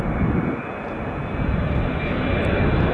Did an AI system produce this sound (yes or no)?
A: no